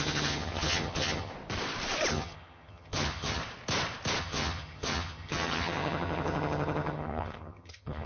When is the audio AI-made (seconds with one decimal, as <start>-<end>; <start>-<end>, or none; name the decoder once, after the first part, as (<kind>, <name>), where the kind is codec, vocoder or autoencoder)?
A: 0.0-1.3 (vocoder, HiFi-GAN); 2.1-3.4; 4.2-8.1